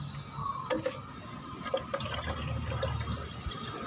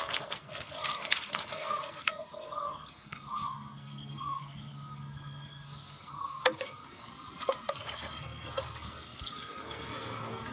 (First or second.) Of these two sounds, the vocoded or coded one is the second